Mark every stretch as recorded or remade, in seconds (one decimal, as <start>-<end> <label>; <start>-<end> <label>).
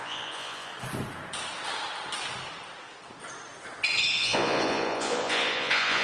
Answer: 0.0-0.7 remade; 0.7-4.1 recorded; 4.1-6.0 remade